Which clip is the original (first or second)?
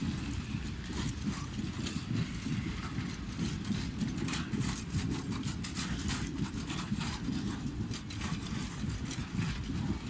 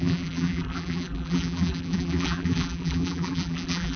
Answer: first